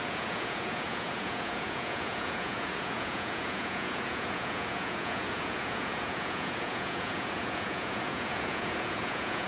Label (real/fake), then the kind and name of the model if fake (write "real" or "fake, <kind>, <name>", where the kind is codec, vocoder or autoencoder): fake, vocoder, Vocos